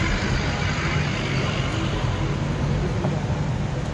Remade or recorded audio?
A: recorded